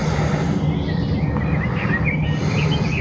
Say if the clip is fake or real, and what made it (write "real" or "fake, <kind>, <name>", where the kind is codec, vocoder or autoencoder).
real